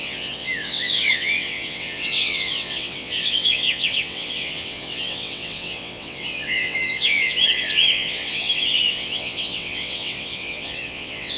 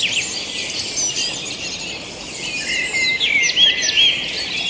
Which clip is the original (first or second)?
second